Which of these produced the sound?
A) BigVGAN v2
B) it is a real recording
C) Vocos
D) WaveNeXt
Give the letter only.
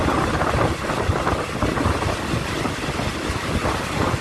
B